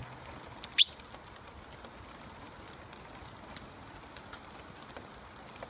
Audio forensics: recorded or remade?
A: recorded